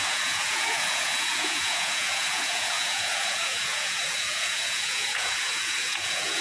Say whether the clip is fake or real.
fake